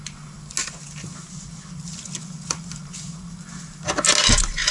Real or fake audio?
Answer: real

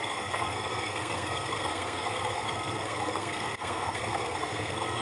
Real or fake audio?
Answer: fake